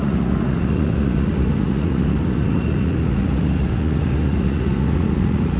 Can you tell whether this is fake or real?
fake